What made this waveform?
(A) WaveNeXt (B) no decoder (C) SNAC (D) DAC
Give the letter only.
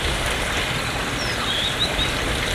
B